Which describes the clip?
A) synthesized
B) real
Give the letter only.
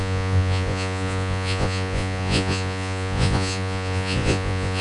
A